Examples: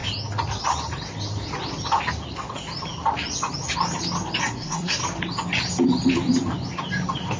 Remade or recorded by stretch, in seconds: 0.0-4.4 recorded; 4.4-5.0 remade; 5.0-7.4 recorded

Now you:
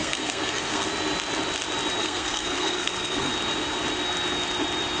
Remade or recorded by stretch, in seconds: 0.0-0.9 remade; 0.9-2.0 recorded; 2.0-3.3 remade; 3.3-5.0 recorded

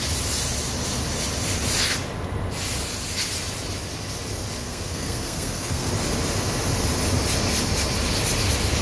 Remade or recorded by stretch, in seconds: 0.0-4.6 recorded; 4.6-5.9 remade; 5.9-8.8 recorded

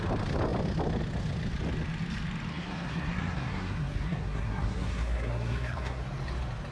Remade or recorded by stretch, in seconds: 0.0-2.5 recorded; 2.5-6.0 remade; 6.0-6.7 recorded

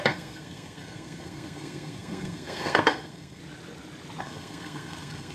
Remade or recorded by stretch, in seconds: 0.0-3.4 remade; 3.4-4.2 recorded; 4.2-5.3 remade

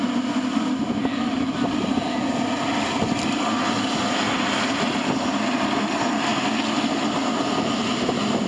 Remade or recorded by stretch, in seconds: 0.0-8.5 recorded

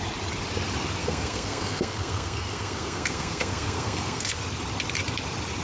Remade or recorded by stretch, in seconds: 0.0-1.0 recorded; 1.0-4.4 remade; 4.4-5.6 recorded